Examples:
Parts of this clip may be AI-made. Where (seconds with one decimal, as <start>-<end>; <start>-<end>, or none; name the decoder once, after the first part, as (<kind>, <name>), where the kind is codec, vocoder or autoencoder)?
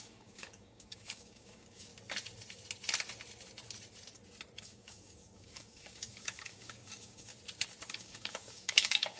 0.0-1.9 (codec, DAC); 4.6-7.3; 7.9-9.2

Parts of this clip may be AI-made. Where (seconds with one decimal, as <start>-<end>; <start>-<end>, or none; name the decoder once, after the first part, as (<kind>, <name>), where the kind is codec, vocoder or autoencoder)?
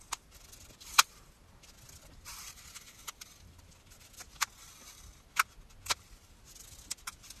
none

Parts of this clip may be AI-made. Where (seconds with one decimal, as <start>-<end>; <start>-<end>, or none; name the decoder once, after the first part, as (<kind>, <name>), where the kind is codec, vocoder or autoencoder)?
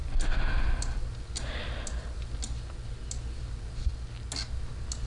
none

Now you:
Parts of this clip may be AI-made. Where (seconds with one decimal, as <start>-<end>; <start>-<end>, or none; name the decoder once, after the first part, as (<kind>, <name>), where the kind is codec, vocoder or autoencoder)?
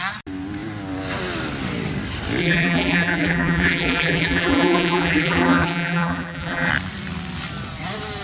2.4-6.7 (vocoder, BigVGAN v2)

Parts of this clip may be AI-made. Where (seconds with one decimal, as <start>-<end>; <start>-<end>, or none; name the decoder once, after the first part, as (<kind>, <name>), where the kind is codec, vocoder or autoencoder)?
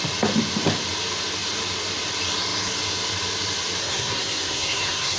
3.8-5.2 (codec, SNAC)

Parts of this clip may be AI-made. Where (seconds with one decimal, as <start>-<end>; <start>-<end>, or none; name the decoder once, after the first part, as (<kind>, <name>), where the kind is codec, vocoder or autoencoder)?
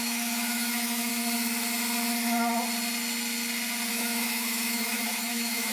0.0-1.1 (autoencoder, DAC-VAE); 3.9-5.7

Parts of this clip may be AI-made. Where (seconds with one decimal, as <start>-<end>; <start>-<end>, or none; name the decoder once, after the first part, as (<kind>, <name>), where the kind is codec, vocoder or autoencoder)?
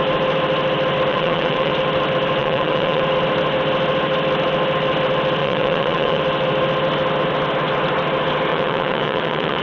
1.1-1.7 (vocoder, WaveNeXt); 2.4-3.0; 5.4-6.2; 8.5-9.6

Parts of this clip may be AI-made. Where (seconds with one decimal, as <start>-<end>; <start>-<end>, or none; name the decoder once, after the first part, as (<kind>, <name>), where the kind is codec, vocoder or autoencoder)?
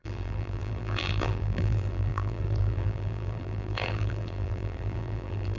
0.0-5.6 (vocoder, BigVGAN v2)